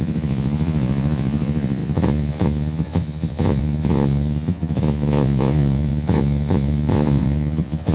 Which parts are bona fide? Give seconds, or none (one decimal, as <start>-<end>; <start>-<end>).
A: none